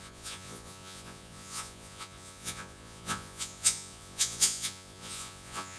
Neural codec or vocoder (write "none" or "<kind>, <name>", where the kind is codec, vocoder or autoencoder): vocoder, Vocos